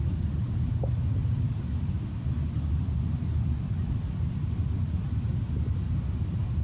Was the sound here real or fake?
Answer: real